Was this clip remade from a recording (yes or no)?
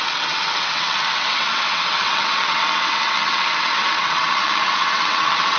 yes